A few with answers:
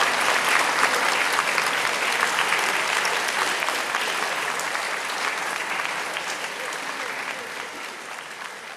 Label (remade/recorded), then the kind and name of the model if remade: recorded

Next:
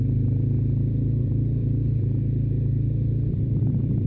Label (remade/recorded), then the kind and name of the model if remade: remade, vocoder, BigVGAN v2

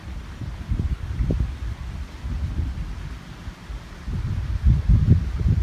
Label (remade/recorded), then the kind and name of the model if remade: remade, vocoder, BigVGAN v2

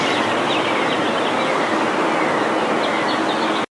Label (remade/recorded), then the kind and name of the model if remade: recorded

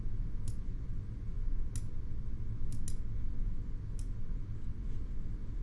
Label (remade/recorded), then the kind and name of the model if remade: recorded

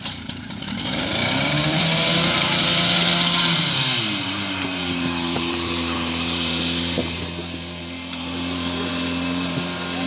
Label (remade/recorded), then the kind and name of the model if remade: remade, vocoder, BigVGAN v2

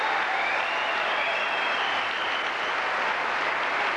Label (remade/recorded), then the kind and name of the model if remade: remade, vocoder, BigVGAN v2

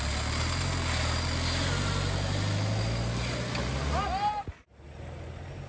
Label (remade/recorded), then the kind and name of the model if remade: recorded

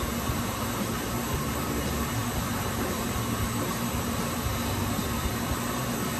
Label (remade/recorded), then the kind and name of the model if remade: remade, vocoder, BigVGAN v2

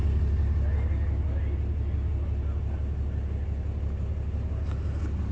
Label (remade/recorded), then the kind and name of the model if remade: recorded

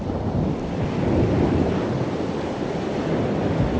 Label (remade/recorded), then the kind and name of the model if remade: recorded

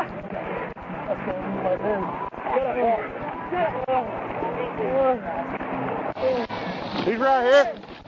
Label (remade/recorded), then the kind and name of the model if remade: recorded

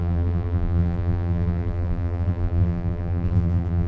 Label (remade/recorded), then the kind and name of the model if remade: remade, vocoder, BigVGAN v2